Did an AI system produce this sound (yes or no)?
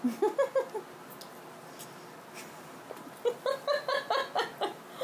no